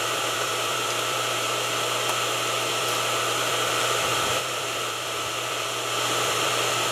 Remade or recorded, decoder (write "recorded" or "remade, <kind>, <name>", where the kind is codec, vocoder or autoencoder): remade, vocoder, BigVGAN v2